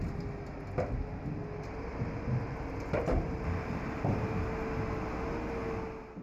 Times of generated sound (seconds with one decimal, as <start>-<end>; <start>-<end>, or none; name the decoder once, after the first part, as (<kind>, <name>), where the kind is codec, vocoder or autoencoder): 1.9-4.4 (vocoder, BigVGAN v2)

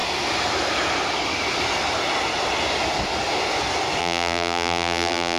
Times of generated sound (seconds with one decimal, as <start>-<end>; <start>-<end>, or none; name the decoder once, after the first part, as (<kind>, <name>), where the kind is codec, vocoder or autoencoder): 4.0-5.4 (vocoder, BigVGAN v2)

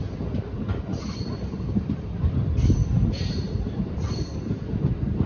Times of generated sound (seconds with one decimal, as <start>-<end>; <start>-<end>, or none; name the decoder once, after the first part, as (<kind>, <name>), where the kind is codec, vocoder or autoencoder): 0.9-4.1 (vocoder, BigVGAN v2)

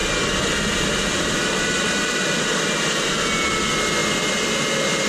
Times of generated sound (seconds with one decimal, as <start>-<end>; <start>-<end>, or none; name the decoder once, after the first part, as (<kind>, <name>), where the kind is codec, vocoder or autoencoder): 0.0-3.1 (vocoder, BigVGAN v2)